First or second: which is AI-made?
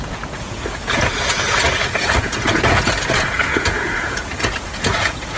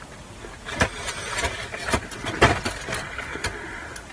first